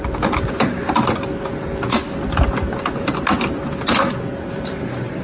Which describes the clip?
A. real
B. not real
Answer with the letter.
A